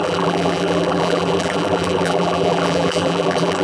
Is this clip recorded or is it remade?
remade